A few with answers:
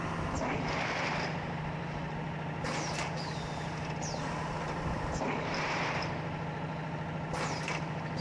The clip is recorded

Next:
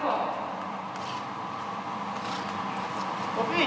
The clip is recorded